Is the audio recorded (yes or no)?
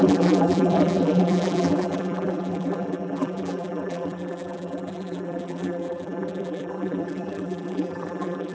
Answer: no